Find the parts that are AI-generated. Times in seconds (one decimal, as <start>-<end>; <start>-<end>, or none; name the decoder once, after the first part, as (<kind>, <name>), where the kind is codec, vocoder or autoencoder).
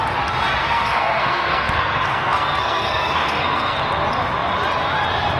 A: 0.6-3.8 (codec, SNAC)